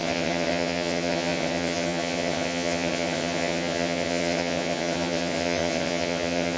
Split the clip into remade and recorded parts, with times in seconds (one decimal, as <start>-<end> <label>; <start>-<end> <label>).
0.0-6.6 remade